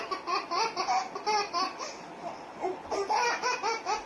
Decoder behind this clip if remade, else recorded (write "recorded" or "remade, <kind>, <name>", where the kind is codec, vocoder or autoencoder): recorded